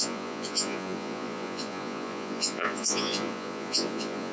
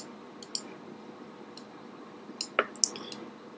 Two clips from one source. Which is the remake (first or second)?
first